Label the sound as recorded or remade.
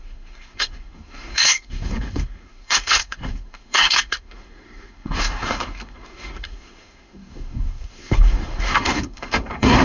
remade